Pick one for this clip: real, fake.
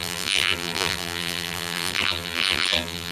fake